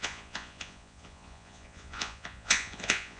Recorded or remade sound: remade